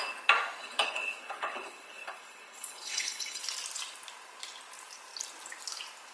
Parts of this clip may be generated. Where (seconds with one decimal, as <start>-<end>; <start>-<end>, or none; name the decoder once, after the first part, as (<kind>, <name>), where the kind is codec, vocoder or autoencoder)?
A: 0.6-3.4 (codec, HILCodec)